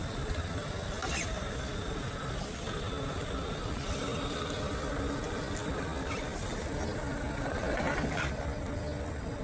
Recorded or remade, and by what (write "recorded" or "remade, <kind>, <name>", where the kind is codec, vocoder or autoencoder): recorded